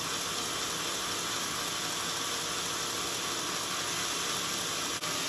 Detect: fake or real real